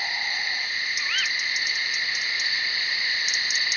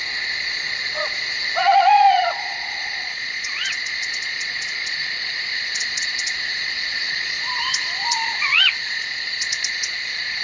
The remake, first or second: second